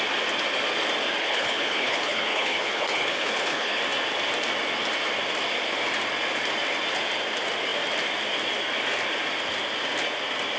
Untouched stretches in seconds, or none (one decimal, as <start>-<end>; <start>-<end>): 0.0-1.2; 3.8-10.6